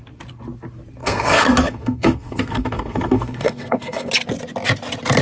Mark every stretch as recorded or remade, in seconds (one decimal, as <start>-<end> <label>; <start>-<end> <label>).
0.0-1.0 recorded; 1.0-4.1 remade; 4.1-5.2 recorded